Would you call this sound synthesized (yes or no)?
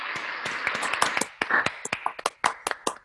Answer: no